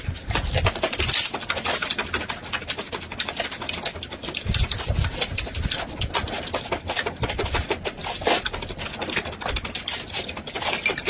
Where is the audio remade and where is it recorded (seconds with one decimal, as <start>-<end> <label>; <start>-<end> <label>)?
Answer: 0.0-11.1 recorded